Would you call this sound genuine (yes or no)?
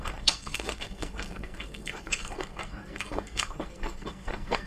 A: no